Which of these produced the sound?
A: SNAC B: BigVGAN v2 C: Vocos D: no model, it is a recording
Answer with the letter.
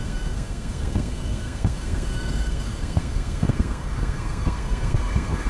A